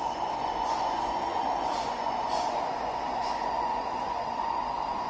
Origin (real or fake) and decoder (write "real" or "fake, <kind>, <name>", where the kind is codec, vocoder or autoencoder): fake, vocoder, Vocos